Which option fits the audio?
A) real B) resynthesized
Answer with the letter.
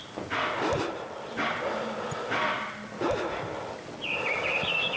A